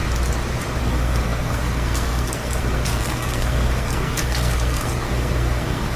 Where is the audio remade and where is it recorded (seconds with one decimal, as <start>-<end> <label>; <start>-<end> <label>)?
0.0-0.8 recorded; 0.8-6.0 remade